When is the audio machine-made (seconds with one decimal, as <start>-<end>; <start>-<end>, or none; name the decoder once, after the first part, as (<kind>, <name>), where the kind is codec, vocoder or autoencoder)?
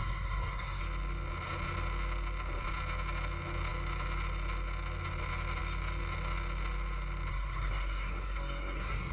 0.0-0.8 (codec, SNAC); 7.3-9.1